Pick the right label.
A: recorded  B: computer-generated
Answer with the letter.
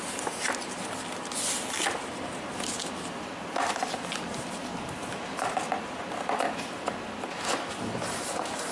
A